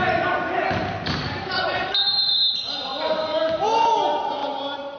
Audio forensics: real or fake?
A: real